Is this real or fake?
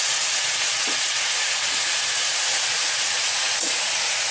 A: fake